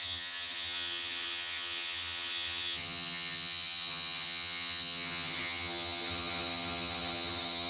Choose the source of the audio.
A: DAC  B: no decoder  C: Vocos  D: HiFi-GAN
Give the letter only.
D